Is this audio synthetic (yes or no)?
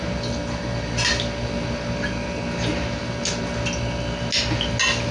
no